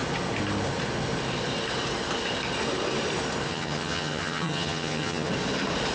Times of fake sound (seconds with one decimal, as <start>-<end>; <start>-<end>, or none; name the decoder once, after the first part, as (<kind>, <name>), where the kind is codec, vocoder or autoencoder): 3.5-5.3 (vocoder, HiFi-GAN)